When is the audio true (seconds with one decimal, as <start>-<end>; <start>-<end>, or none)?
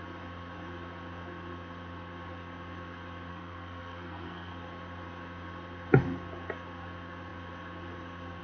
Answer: 0.0-3.3; 4.5-8.4